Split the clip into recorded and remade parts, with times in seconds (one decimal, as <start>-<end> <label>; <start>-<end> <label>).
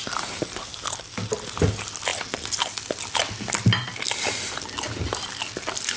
0.0-6.0 recorded